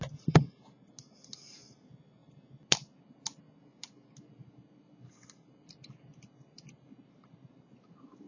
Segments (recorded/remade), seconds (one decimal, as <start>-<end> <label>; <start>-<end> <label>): 0.0-8.3 recorded